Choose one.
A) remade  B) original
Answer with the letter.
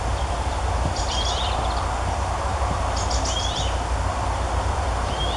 B